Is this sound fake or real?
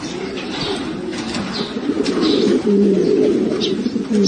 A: real